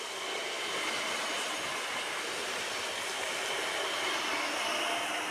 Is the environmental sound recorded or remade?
recorded